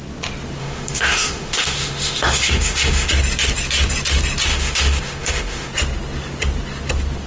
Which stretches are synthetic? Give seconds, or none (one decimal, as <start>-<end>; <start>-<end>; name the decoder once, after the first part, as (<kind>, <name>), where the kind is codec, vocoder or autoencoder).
0.6-3.1 (autoencoder, DAC-VAE); 4.5-5.7